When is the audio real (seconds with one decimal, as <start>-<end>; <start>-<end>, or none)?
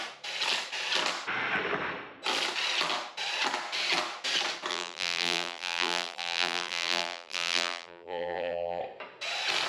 0.0-4.7; 8.8-9.7